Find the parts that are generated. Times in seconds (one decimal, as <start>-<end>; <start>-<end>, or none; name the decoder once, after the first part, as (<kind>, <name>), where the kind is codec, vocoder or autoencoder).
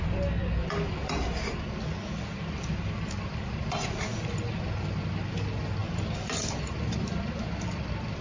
none